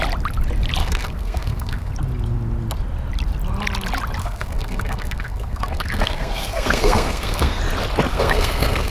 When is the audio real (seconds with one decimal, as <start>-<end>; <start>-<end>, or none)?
0.0-0.8; 1.9-4.2; 7.6-8.1